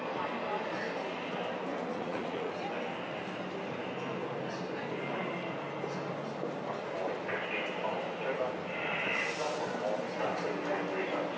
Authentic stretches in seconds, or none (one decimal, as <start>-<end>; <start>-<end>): 0.0-1.9; 2.5-11.4